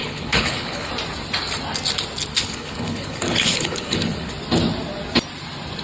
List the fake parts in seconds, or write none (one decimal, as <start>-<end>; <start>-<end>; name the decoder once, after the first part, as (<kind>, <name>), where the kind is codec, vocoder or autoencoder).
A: 0.0-0.9 (codec, HILCodec); 2.3-4.3